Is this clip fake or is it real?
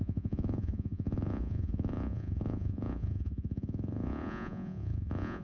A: fake